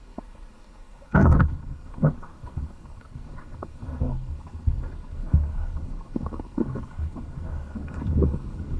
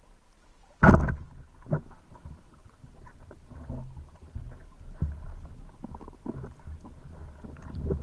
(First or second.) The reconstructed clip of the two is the first